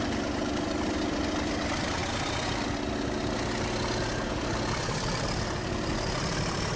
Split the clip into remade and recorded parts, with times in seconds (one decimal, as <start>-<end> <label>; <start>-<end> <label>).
0.0-2.0 remade; 2.0-4.4 recorded; 4.4-6.8 remade